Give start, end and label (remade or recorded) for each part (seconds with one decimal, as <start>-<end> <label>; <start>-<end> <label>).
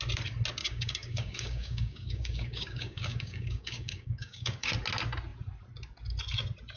0.0-0.6 recorded; 0.6-4.7 remade; 4.7-6.8 recorded